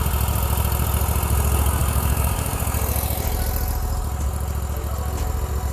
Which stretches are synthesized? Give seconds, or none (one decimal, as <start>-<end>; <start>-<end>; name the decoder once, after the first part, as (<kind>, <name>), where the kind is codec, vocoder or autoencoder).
1.8-2.6 (codec, DAC)